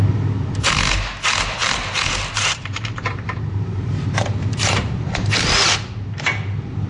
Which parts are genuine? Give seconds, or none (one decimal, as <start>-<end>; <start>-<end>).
0.0-1.6; 5.4-6.9